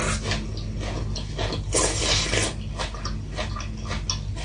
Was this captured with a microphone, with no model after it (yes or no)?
yes